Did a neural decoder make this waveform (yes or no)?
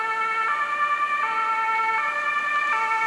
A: no